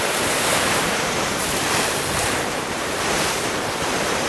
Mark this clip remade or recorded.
remade